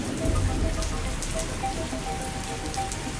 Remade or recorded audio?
recorded